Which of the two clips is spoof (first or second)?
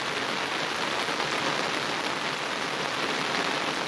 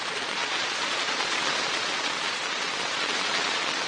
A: second